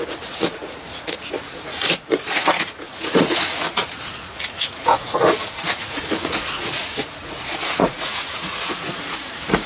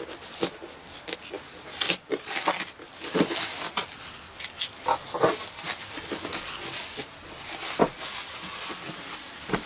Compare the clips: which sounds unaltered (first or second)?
second